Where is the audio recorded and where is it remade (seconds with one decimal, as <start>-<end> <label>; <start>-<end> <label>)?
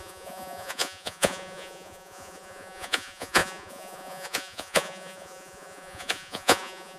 0.0-7.0 remade